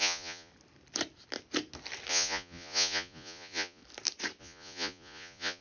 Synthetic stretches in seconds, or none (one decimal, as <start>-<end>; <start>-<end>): 0.0-0.5; 2.1-3.8; 4.4-5.6